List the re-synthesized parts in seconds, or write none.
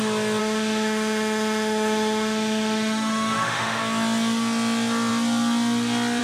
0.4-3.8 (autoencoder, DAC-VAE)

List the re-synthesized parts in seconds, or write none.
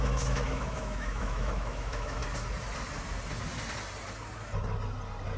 0.0-2.2 (autoencoder, DAC-VAE)